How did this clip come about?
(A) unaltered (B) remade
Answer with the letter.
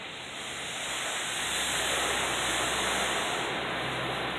A